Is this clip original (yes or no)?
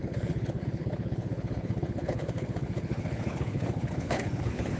no